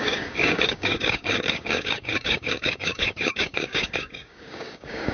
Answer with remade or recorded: remade